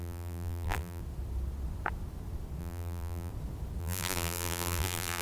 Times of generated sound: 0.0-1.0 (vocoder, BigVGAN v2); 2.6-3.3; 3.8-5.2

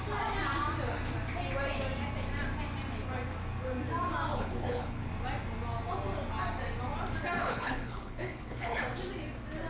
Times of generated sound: 4.3-5.1 (codec, HILCodec); 7.4-8.8

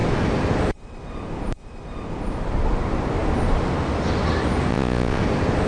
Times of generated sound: 4.7-5.2 (vocoder, Vocos)